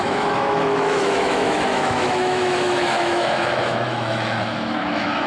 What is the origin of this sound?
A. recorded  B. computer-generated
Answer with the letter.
B